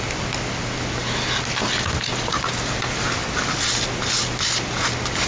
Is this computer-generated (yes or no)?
no